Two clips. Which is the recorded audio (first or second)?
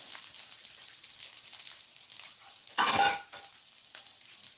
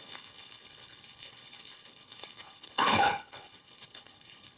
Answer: first